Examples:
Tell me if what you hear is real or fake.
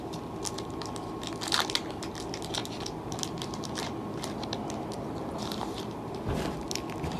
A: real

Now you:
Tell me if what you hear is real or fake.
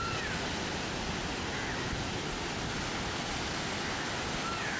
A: real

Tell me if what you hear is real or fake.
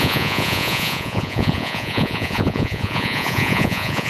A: fake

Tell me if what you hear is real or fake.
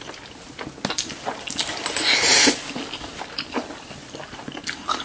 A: real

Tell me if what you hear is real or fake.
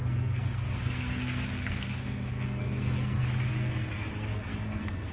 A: fake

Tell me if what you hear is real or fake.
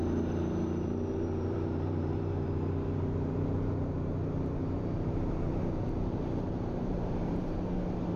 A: fake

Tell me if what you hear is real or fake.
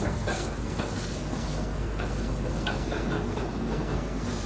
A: fake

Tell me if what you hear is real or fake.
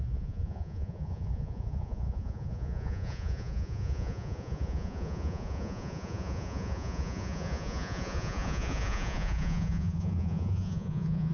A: fake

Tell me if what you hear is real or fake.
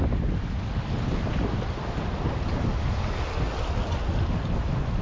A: real